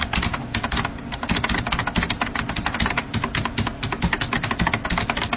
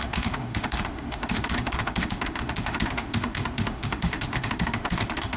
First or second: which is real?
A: first